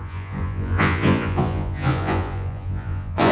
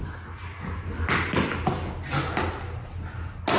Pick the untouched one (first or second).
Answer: second